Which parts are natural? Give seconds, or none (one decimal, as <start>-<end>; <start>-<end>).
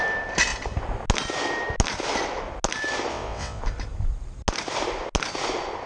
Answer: 0.0-3.1; 3.6-5.9